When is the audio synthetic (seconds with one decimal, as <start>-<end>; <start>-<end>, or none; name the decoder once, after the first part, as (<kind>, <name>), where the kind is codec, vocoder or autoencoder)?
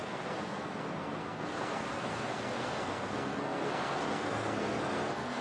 0.0-5.4 (codec, SNAC)